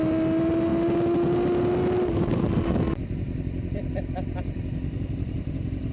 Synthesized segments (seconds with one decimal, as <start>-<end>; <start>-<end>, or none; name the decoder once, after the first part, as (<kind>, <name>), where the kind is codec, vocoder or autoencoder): none